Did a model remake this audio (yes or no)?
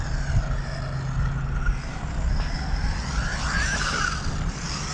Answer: no